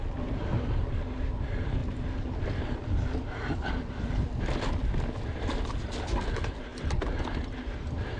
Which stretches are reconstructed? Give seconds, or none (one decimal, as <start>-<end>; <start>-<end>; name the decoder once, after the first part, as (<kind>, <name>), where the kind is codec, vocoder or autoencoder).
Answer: none